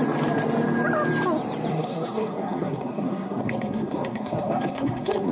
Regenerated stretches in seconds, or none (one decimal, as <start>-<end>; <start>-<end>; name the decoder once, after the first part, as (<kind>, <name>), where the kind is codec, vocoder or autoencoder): 1.7-5.3 (codec, SNAC)